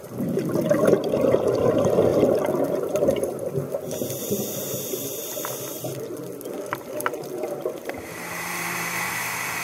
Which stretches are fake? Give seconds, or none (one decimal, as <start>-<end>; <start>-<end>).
7.8-9.1